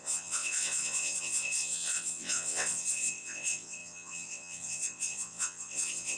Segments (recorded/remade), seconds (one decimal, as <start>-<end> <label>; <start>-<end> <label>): 0.0-6.2 remade